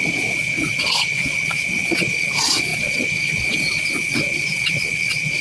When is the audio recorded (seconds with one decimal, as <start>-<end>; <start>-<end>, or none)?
none